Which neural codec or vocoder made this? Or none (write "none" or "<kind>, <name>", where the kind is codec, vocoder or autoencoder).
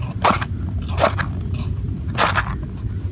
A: none